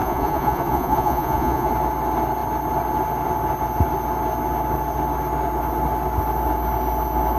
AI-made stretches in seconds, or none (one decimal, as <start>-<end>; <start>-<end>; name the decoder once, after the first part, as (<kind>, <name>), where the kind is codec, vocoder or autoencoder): 0.0-1.7 (vocoder, Vocos)